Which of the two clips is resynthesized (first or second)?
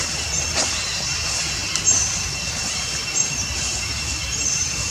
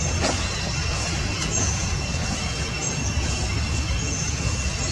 second